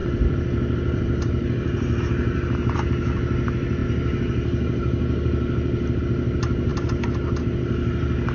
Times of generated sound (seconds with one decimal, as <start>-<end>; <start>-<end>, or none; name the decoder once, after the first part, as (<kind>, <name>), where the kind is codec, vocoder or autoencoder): 0.0-2.0 (vocoder, BigVGAN v2)